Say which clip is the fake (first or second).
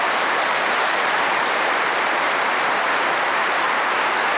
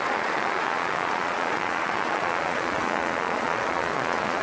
second